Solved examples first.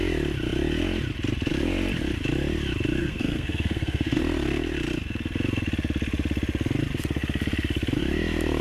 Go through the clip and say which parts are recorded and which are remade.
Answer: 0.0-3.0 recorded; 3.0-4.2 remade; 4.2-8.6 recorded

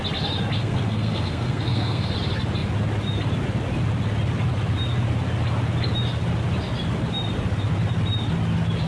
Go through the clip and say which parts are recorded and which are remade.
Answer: 0.0-0.6 recorded; 0.6-2.1 remade; 2.1-8.9 recorded

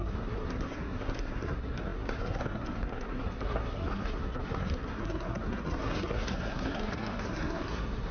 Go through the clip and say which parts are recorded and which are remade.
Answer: 0.0-8.1 remade

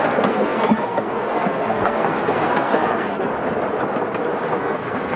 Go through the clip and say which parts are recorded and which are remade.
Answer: 0.0-3.3 remade; 3.3-4.6 recorded; 4.6-5.2 remade

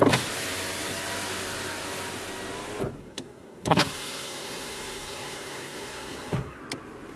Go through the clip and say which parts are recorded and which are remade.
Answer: 0.0-3.0 recorded; 3.0-6.6 remade; 6.6-7.2 recorded

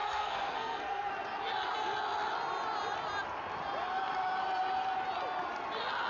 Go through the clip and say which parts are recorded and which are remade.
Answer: 0.0-1.1 remade; 1.1-6.1 recorded

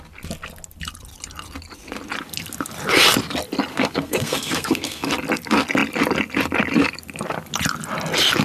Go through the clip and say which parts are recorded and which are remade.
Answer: 0.0-3.7 recorded; 3.7-5.1 remade; 5.1-8.4 recorded

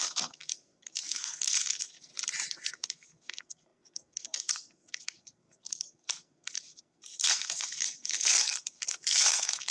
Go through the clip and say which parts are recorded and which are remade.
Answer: 0.0-2.1 remade; 2.1-2.7 recorded; 2.7-9.7 remade